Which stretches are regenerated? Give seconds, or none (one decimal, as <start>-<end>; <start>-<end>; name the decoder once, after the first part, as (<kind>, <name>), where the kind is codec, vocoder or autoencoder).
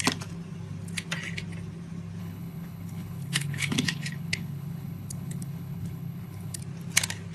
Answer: 2.2-6.6 (codec, HILCodec)